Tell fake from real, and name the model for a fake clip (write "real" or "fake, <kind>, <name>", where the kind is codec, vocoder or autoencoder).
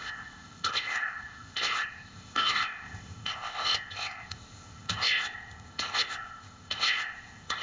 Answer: fake, codec, ZipCodec